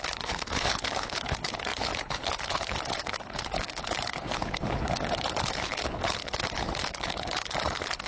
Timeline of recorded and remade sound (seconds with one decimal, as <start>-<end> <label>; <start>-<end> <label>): 0.0-8.1 remade